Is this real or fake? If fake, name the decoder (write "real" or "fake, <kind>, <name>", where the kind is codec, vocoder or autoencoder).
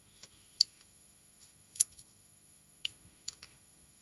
fake, autoencoder, DAC-VAE